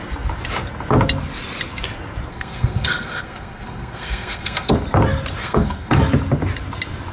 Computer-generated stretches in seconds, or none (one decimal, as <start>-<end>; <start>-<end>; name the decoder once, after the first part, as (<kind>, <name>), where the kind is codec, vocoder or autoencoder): 2.3-4.7 (codec, SNAC); 5.4-6.0